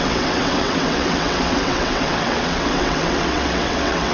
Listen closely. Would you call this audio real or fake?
fake